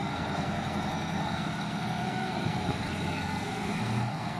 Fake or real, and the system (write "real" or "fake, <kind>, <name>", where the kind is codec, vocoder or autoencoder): fake, codec, SNAC